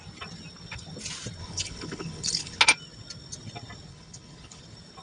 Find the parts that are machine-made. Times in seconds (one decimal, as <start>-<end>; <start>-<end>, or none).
1.4-2.6; 3.9-4.6